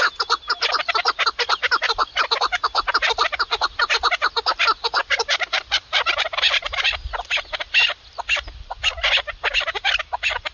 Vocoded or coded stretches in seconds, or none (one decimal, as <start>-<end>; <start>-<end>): none